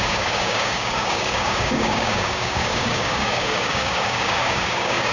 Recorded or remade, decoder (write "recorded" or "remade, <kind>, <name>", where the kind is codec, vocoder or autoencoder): remade, codec, DAC